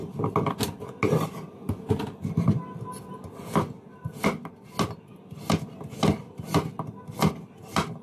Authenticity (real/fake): real